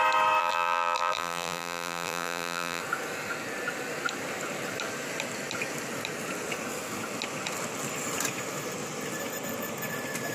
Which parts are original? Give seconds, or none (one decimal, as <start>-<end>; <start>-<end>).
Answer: 0.0-0.4; 2.8-10.3